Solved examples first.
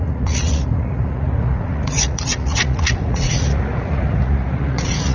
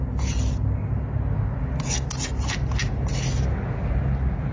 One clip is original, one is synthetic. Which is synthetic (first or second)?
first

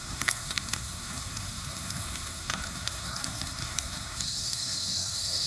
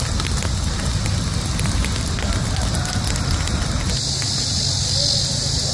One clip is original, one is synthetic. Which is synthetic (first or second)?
first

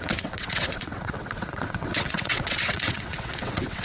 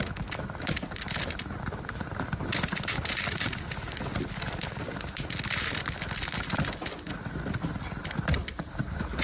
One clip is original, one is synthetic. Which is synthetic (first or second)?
first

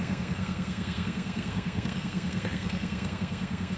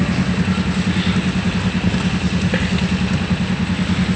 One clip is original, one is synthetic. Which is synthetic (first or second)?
first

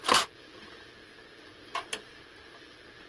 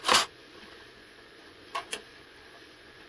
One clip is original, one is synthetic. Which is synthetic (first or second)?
second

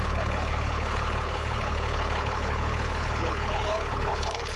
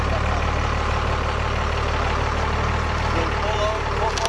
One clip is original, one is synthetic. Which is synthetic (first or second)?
first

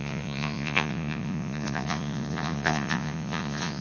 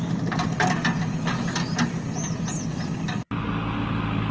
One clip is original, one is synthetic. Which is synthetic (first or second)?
first